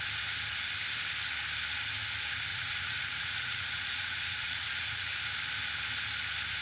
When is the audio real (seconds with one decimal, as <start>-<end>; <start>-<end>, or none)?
0.0-2.5; 5.1-6.6